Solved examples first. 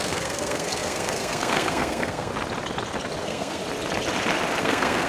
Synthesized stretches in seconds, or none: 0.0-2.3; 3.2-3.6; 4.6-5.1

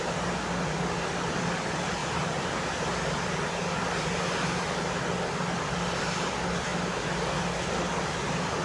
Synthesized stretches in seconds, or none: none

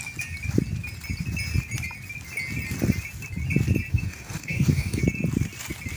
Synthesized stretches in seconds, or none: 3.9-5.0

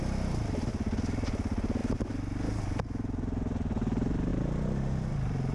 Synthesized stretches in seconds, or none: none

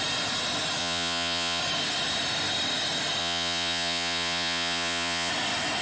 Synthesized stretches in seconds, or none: 0.8-1.6; 3.2-5.3

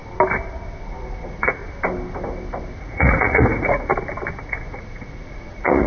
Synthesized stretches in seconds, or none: 0.9-1.6; 2.8-3.9; 4.4-5.9